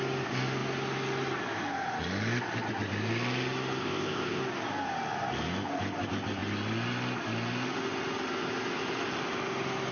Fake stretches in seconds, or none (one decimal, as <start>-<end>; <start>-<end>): 3.8-4.4